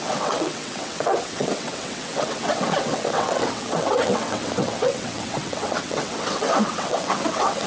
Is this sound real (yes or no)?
no